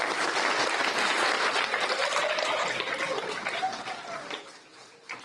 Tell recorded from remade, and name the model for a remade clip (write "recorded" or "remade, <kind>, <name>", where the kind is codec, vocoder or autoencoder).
recorded